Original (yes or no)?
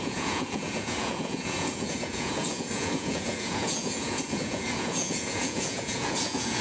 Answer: no